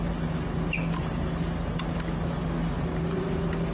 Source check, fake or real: real